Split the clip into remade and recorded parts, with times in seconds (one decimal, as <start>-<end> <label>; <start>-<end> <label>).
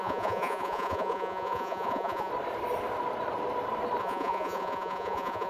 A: 0.0-2.3 remade; 2.3-4.0 recorded; 4.0-5.5 remade